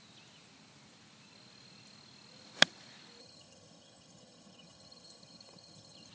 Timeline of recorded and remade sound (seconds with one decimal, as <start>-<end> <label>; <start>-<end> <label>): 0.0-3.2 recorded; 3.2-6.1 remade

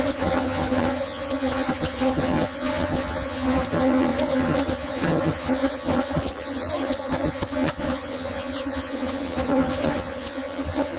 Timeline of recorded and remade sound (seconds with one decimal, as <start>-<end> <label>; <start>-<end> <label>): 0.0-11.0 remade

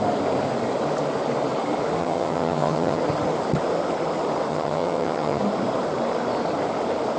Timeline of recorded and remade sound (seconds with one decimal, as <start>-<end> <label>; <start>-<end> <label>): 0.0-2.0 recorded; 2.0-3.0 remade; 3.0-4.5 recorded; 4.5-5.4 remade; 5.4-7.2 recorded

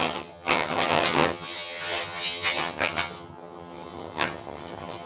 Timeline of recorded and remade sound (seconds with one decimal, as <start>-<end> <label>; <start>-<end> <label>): 0.0-5.1 remade